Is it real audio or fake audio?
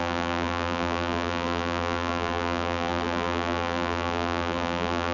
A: fake